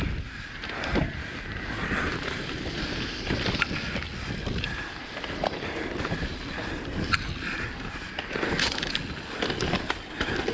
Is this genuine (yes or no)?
yes